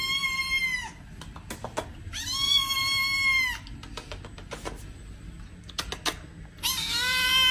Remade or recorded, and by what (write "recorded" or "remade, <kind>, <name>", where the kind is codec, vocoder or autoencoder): recorded